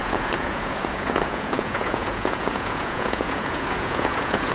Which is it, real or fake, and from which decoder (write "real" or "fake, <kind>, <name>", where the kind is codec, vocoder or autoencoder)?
fake, vocoder, Vocos